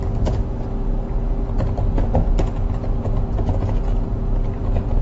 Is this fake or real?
real